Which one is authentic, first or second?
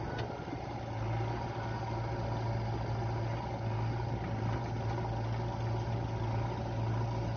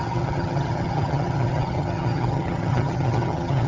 first